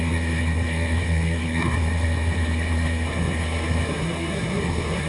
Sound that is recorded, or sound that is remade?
remade